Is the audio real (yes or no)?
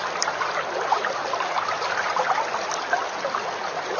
yes